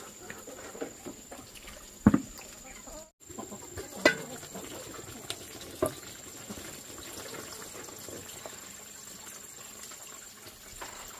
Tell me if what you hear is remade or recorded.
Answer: recorded